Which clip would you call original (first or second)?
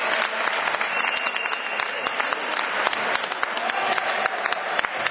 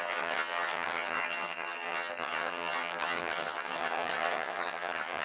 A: first